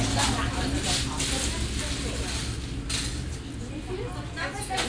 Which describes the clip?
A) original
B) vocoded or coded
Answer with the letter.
A